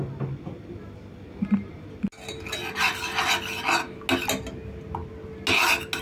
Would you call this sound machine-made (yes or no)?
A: no